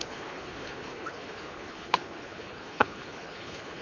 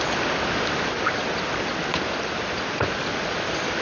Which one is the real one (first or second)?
second